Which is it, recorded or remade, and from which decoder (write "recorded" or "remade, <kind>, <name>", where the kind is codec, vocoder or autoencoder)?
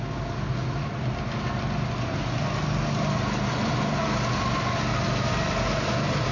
recorded